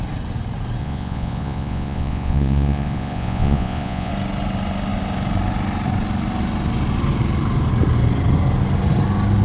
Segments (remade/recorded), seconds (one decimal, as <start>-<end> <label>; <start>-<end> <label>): 0.0-0.8 recorded; 0.8-4.1 remade; 4.1-9.4 recorded